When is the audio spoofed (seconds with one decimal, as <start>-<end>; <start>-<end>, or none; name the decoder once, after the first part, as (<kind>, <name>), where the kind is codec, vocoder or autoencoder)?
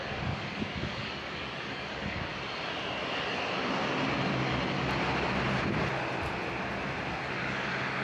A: 0.0-2.3 (codec, DAC); 7.1-8.0